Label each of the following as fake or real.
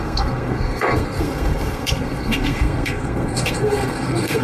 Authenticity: fake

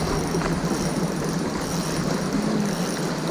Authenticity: real